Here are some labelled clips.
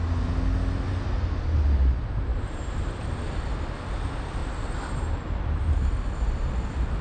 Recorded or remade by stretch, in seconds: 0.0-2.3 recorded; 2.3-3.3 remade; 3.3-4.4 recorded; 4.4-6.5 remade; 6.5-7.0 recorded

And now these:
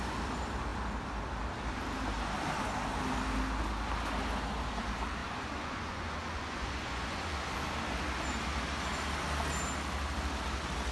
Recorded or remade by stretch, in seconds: 0.0-5.2 recorded; 5.2-7.4 remade; 7.4-10.9 recorded

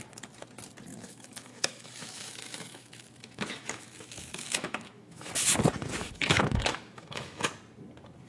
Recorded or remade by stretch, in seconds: 0.0-0.9 recorded; 0.9-5.3 remade; 5.3-6.0 recorded; 6.0-7.5 remade; 7.5-8.3 recorded